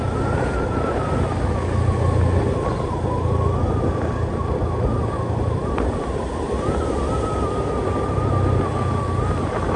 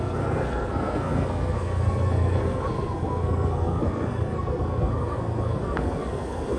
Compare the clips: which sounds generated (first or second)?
second